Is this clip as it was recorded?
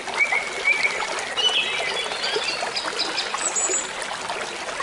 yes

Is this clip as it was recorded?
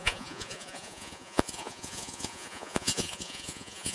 no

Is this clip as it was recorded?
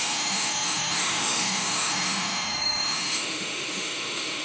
no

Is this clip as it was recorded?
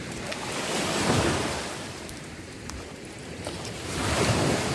no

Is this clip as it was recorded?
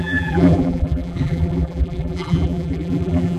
no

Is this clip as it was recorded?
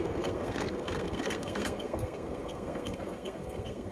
no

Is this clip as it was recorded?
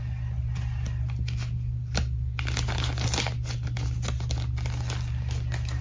yes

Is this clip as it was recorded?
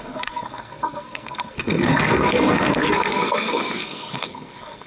no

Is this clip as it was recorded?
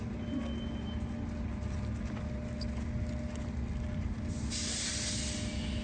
yes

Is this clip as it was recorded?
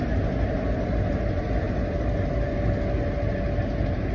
yes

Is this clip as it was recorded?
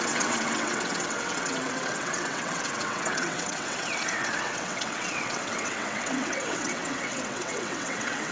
no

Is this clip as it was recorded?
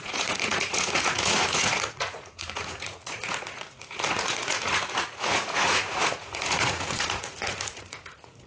no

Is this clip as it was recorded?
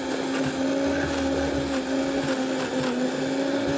yes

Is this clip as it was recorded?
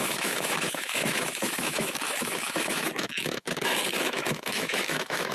no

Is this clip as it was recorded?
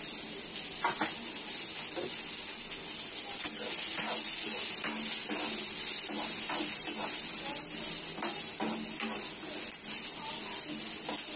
yes